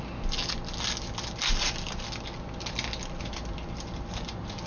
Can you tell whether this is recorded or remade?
recorded